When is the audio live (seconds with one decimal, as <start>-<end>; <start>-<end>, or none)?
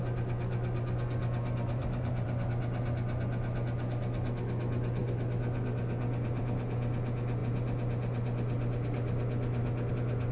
0.0-1.8; 2.5-10.3